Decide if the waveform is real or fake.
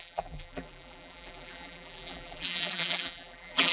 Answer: fake